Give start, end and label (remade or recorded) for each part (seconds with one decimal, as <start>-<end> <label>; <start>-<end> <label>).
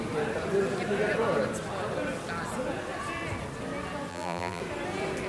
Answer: 0.0-4.1 recorded; 4.1-4.6 remade; 4.6-5.3 recorded